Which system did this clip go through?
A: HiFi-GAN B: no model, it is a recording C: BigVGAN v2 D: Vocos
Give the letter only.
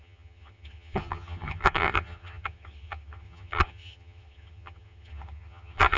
A